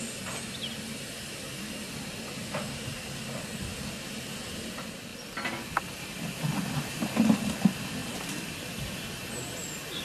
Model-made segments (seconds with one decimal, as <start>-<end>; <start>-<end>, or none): 8.0-9.0

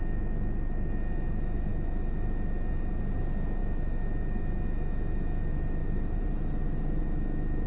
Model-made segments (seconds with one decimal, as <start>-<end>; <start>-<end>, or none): 5.8-7.0

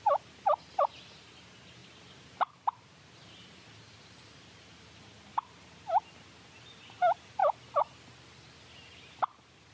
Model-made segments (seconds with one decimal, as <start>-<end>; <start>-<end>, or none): none

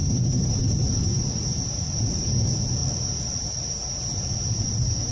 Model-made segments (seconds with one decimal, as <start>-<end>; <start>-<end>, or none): 0.0-2.8; 3.4-5.1

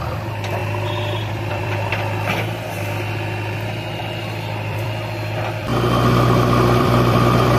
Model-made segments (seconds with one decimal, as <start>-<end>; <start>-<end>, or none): 0.0-1.9; 4.0-5.7; 6.8-7.6

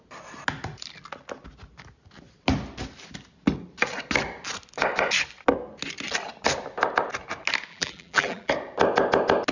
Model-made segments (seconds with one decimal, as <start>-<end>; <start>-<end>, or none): 7.7-8.5